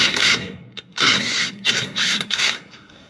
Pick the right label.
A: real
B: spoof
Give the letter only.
B